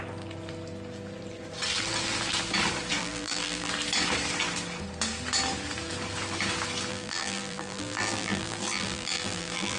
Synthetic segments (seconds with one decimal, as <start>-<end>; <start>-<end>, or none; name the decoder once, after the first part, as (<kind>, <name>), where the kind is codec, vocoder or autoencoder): 3.0-3.7 (vocoder, BigVGAN v2); 6.9-9.8